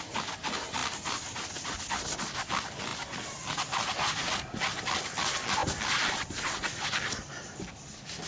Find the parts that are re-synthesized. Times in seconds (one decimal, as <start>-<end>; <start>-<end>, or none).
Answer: none